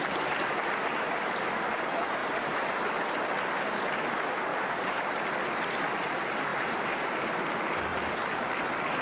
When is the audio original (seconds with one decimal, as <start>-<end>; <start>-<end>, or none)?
0.0-4.5; 5.0-6.5; 7.3-9.0